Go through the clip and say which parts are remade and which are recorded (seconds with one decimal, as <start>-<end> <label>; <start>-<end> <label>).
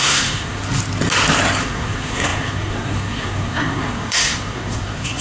0.0-0.6 remade; 0.6-1.6 recorded; 1.6-5.2 remade